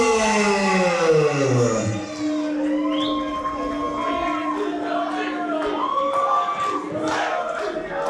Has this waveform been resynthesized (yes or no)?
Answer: no